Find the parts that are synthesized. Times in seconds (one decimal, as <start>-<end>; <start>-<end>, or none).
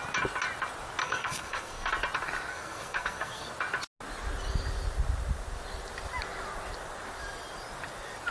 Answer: 1.0-1.9; 2.5-3.5